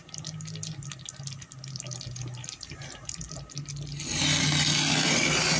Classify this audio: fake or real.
real